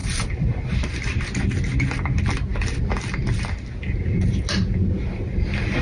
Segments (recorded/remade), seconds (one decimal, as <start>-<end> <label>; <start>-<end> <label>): 0.0-1.4 remade; 1.4-2.5 recorded; 2.5-3.8 remade; 3.8-5.8 recorded